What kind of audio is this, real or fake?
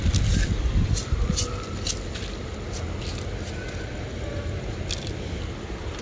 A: real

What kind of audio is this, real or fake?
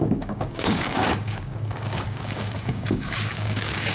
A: fake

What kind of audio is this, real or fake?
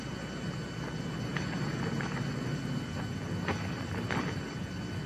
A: real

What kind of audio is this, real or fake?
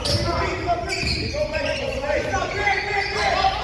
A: real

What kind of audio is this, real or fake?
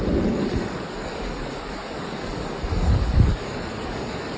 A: fake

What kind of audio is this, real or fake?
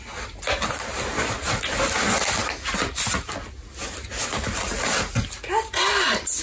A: real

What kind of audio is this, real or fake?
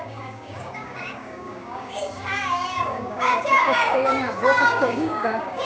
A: fake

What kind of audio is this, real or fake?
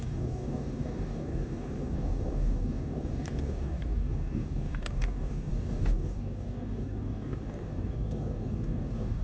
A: fake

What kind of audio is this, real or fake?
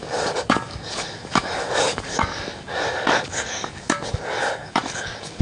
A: fake